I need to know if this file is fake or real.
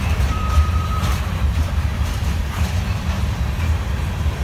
fake